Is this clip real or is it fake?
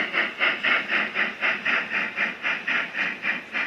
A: real